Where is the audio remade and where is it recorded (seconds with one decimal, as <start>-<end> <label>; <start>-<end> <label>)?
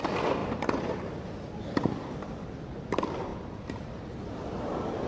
0.0-0.4 recorded; 0.4-2.6 remade; 2.6-5.1 recorded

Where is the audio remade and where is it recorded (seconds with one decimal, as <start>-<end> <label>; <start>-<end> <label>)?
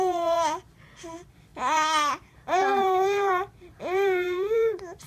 0.0-5.1 remade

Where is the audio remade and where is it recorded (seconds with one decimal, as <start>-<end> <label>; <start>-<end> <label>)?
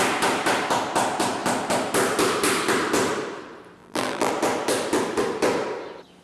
0.0-3.8 recorded; 3.8-4.3 remade; 4.3-6.2 recorded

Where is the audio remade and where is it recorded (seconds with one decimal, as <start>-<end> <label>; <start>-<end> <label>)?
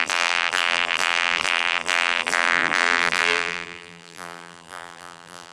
0.0-5.5 remade